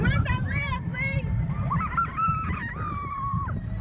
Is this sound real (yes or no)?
no